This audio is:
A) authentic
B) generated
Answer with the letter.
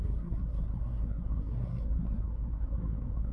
B